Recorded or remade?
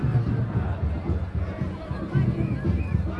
recorded